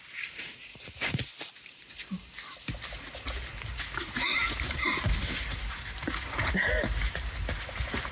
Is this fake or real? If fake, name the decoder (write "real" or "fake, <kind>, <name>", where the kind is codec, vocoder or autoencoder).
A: real